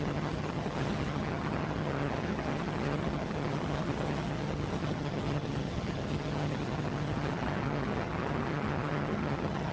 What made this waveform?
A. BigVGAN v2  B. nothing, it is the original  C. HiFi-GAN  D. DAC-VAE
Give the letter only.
C